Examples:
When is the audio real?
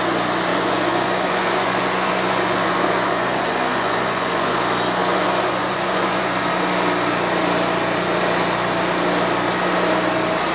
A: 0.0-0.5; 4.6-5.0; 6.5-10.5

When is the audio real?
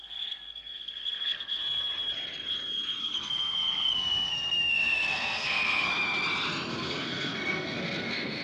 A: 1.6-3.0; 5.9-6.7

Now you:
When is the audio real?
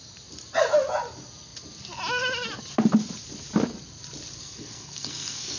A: 0.0-4.4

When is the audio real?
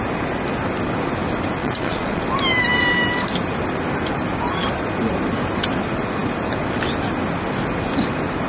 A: 0.0-1.6; 2.2-8.5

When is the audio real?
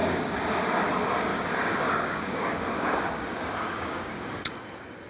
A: 0.9-1.3; 4.4-5.1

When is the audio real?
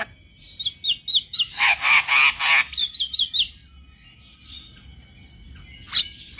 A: 0.0-1.1; 2.1-6.4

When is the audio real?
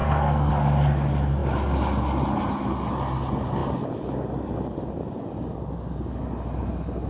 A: 0.5-7.1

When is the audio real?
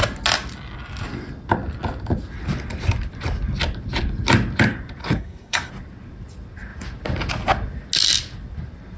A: 0.0-5.0; 5.7-9.0